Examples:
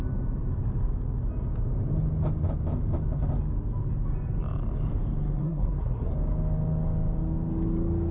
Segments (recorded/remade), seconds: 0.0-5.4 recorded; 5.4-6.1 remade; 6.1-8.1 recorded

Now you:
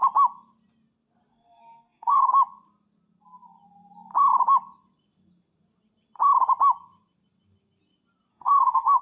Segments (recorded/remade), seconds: 0.0-1.3 recorded; 1.3-2.3 remade; 2.3-8.3 recorded; 8.3-9.0 remade

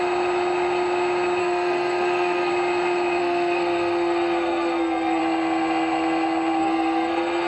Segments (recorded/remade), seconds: 0.0-1.4 recorded; 1.4-2.5 remade; 2.5-3.2 recorded; 3.2-5.2 remade; 5.2-6.6 recorded; 6.6-7.5 remade

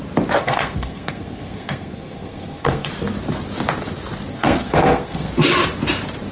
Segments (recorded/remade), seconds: 0.0-0.4 recorded; 0.4-2.9 remade; 2.9-4.3 recorded; 4.3-5.3 remade; 5.3-6.3 recorded

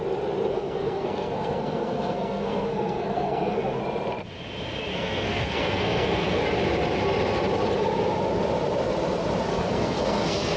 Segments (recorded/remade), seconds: 0.0-0.5 recorded; 0.5-3.8 remade; 3.8-4.9 recorded; 4.9-6.4 remade; 6.4-9.5 recorded; 9.5-10.6 remade

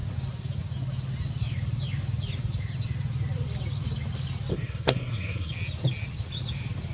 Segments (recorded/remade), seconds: 0.0-4.5 recorded; 4.5-5.5 remade; 5.5-6.9 recorded

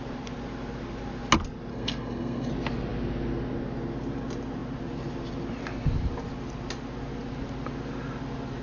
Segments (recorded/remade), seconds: 0.0-1.7 recorded; 1.7-2.5 remade; 2.5-8.6 recorded

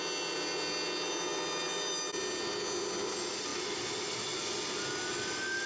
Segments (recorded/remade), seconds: 0.0-5.7 recorded